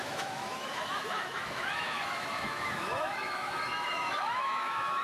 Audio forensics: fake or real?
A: fake